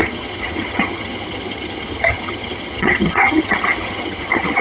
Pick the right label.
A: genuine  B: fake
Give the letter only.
B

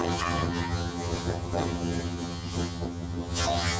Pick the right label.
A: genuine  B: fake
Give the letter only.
B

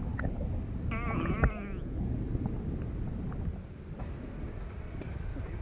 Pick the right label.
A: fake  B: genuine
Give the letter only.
B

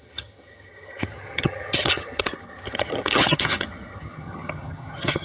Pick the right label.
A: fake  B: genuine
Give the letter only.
A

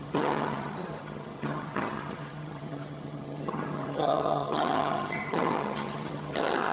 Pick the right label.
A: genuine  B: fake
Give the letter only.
B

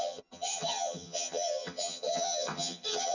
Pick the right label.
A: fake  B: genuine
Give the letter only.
A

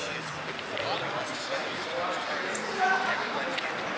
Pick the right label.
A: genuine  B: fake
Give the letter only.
A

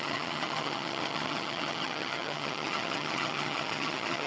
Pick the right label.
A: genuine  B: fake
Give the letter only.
B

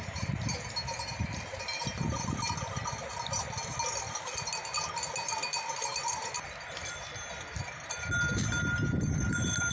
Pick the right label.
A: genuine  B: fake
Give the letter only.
A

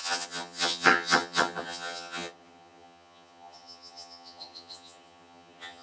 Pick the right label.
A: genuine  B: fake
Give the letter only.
B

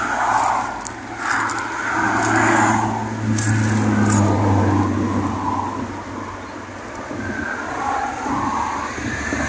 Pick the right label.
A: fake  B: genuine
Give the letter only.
B